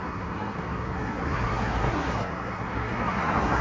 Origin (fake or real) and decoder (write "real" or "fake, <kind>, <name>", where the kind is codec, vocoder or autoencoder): fake, codec, SNAC